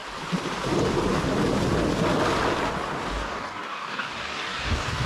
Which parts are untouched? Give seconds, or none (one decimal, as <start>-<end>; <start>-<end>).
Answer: 0.0-3.1